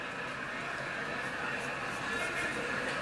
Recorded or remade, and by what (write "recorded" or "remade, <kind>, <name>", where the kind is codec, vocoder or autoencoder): recorded